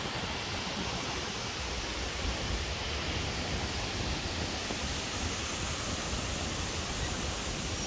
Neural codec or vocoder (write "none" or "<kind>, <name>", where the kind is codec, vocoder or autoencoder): none